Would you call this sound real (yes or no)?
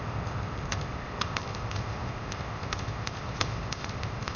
no